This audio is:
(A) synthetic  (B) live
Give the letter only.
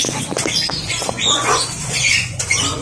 A